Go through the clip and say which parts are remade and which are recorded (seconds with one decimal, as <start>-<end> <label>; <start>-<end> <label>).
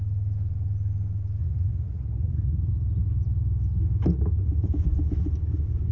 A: 0.0-1.4 recorded; 1.4-2.7 remade; 2.7-5.9 recorded